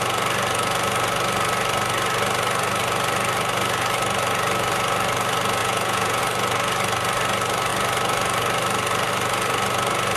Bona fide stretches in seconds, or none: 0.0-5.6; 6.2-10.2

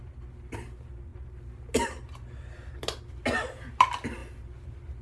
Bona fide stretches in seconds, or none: 0.0-5.0

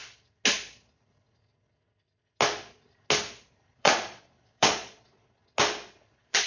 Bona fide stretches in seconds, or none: 0.0-3.7; 5.4-6.1

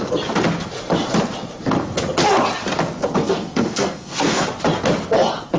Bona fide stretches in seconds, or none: 0.0-3.2; 4.4-5.6

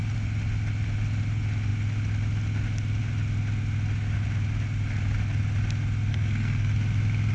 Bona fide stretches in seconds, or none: 0.0-6.1; 6.7-7.3

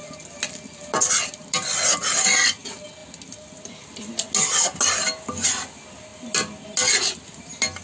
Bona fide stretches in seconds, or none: 0.0-7.8